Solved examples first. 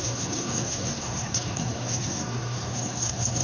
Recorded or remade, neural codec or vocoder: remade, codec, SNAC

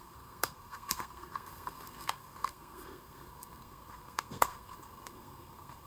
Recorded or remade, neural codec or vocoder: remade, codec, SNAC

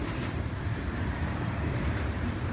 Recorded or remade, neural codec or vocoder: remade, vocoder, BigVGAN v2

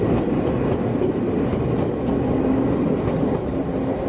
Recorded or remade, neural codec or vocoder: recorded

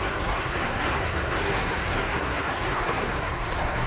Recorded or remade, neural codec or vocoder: remade, codec, SNAC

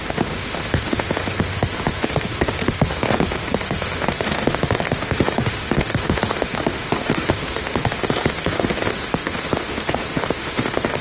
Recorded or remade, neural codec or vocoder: remade, autoencoder, DAC-VAE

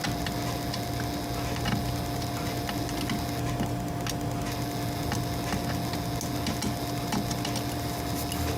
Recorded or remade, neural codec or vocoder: recorded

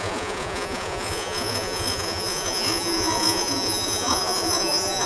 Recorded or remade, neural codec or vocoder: remade, vocoder, Vocos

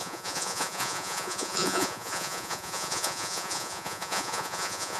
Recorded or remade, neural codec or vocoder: remade, vocoder, Vocos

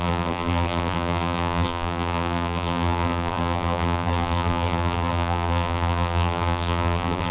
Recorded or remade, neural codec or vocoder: remade, vocoder, BigVGAN v2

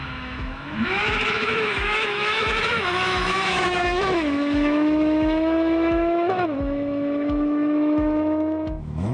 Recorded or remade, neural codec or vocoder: remade, autoencoder, DAC-VAE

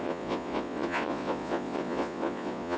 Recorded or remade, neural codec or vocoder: remade, vocoder, Vocos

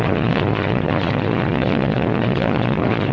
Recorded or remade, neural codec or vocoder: remade, vocoder, Vocos